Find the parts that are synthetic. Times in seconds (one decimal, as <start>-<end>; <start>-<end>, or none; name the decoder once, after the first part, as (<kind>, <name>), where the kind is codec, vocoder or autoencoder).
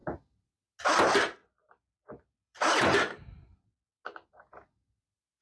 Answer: 0.0-0.5 (vocoder, BigVGAN v2); 1.4-4.0